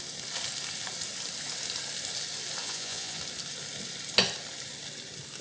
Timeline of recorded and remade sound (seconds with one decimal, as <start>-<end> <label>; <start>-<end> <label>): 0.0-2.6 recorded; 2.6-3.2 remade; 3.2-5.4 recorded